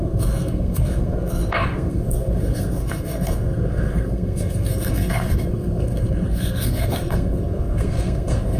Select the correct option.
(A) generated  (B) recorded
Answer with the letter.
A